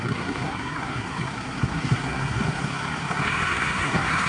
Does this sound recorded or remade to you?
remade